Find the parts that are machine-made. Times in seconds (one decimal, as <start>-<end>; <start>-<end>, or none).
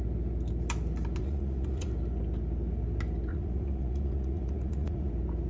1.2-1.9; 3.3-5.1